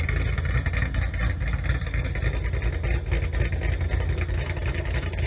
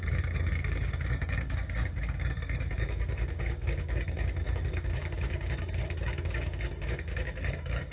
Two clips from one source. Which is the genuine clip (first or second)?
first